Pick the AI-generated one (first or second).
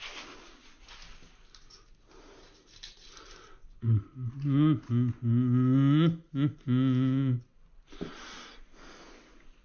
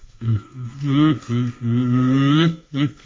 second